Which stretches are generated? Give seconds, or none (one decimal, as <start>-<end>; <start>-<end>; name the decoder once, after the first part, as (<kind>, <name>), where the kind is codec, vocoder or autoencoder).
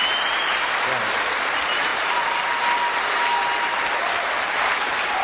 none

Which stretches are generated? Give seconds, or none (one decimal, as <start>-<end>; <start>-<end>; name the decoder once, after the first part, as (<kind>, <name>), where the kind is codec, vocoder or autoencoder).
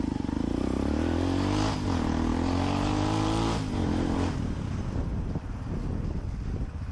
none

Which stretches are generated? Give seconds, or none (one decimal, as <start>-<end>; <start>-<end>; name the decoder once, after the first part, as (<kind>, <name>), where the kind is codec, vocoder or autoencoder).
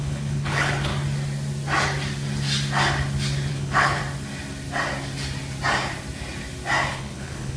0.0-0.9 (codec, HILCodec); 3.5-4.0; 6.9-7.6